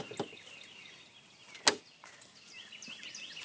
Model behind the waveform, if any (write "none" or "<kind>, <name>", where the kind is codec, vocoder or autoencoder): none